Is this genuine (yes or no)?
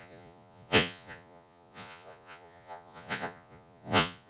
no